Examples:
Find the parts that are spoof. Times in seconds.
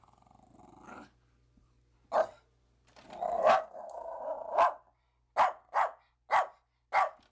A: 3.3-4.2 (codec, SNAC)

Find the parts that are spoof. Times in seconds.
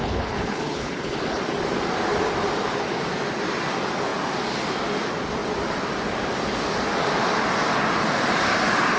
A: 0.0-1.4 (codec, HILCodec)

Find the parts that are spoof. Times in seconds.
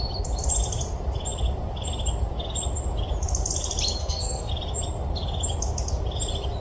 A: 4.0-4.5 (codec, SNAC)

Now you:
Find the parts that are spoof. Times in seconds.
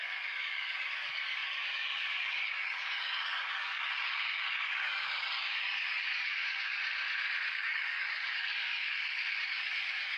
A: 0.0-6.8 (codec, DAC); 7.5-10.2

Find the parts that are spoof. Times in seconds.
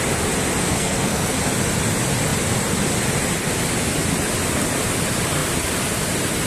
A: 0.6-1.4 (codec, SNAC)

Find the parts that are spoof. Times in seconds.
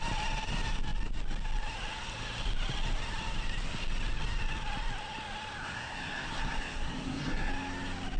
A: 5.6-7.5 (codec, SNAC)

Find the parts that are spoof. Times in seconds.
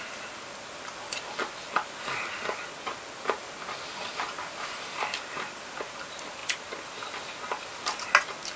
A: none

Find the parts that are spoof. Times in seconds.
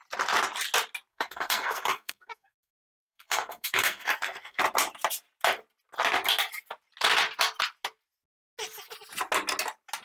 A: 1.1-4.6 (codec, SNAC)